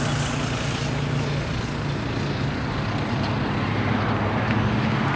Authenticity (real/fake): real